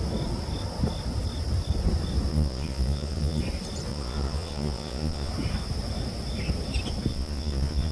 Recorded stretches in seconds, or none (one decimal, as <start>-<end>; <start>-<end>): 0.0-2.3; 3.4-3.9; 5.3-7.1